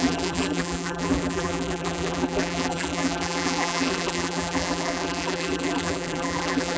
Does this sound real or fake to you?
fake